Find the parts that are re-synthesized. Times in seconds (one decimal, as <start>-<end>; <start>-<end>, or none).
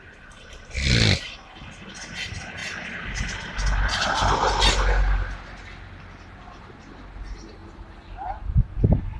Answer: none